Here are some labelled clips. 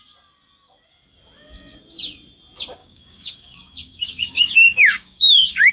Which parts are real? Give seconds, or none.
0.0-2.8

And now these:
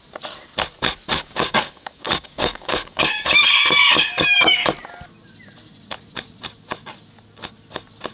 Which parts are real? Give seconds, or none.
0.0-1.1; 4.7-8.1

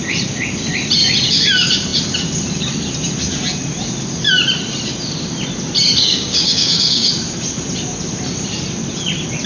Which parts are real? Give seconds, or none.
0.0-6.0; 7.1-9.5

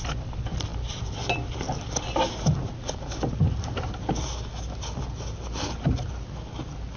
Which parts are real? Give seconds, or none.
0.0-7.0

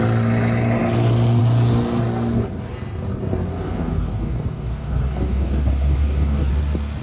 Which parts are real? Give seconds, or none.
0.0-3.5; 6.5-7.0

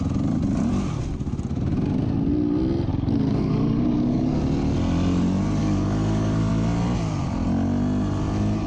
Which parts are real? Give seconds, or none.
0.0-2.9; 4.4-5.6; 6.5-8.7